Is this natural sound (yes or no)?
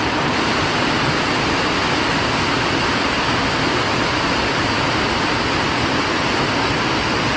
yes